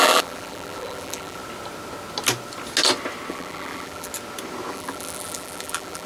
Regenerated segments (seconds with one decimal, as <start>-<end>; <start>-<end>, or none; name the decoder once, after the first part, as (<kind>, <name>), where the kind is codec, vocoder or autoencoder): 0.0-1.4 (vocoder, BigVGAN v2); 3.3-4.1; 4.7-6.1